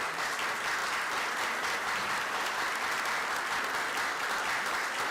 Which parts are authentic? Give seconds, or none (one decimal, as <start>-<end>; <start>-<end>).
0.0-5.1